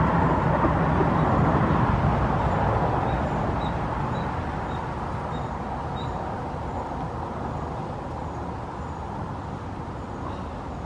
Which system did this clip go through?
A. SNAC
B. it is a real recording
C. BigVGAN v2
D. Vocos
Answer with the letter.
B